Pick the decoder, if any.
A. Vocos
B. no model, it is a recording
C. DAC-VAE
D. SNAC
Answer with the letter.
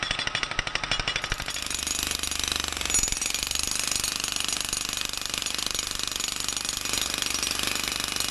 B